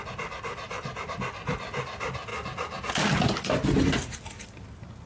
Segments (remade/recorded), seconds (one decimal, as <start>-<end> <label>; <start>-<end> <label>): 0.0-5.1 recorded